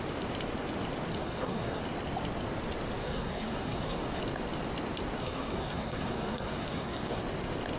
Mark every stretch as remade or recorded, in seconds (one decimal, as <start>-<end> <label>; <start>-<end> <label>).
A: 0.0-1.2 recorded; 1.2-1.8 remade; 1.8-3.0 recorded; 3.0-4.2 remade; 4.2-5.2 recorded; 5.2-7.2 remade; 7.2-7.8 recorded